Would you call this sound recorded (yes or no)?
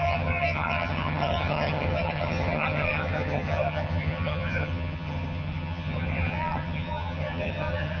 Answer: no